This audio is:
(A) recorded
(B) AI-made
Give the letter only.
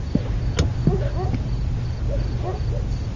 A